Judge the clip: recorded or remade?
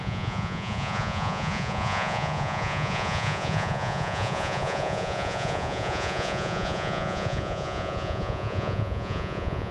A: remade